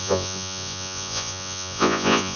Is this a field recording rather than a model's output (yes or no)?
no